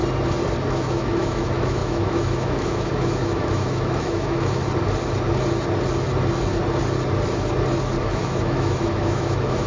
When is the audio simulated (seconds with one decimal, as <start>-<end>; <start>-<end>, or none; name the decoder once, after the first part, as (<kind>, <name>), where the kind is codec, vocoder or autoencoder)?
0.7-4.6 (autoencoder, DAC-VAE); 8.0-9.7